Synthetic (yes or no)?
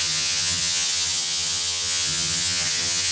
yes